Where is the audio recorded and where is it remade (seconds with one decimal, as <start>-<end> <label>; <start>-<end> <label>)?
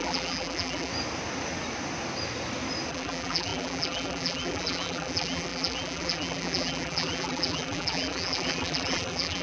0.0-0.9 remade; 0.9-2.9 recorded; 2.9-9.4 remade